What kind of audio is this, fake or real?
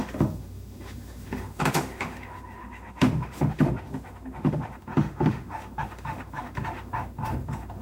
fake